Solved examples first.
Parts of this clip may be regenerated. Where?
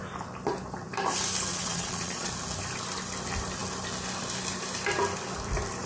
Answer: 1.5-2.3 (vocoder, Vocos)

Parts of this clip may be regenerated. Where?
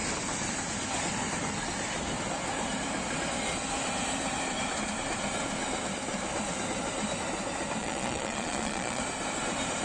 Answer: 7.8-9.0 (vocoder, Vocos)